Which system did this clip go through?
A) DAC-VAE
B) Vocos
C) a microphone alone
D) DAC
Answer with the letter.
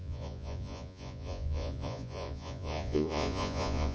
B